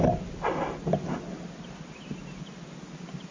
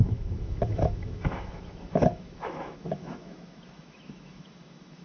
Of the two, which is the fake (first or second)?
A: second